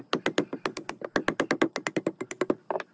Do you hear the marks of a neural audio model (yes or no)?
no